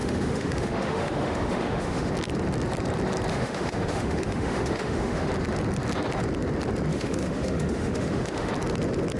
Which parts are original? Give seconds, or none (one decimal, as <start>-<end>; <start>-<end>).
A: 2.1-3.3; 5.3-6.9; 8.5-9.2